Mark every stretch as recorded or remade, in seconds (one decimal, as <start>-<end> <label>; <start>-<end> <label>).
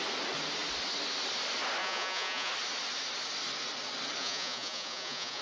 0.0-1.8 recorded; 1.8-2.5 remade; 2.5-4.2 recorded; 4.2-5.4 remade